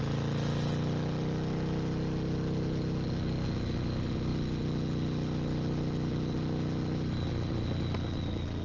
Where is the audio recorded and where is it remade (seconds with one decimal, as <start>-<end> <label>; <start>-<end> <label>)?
0.0-8.6 recorded